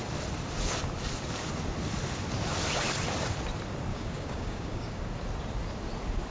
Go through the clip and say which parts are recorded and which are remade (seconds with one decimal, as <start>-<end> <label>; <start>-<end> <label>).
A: 0.0-3.9 recorded; 3.9-5.0 remade; 5.0-6.3 recorded